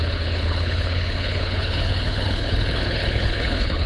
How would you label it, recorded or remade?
remade